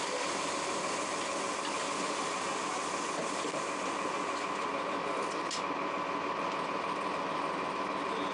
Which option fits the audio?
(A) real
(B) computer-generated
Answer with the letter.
A